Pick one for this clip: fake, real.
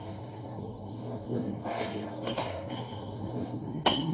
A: fake